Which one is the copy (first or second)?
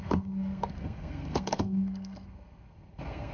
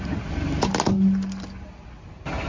first